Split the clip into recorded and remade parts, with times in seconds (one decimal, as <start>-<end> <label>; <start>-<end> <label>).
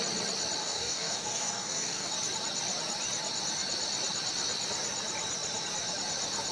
0.0-0.6 recorded; 0.6-2.1 remade; 2.1-6.5 recorded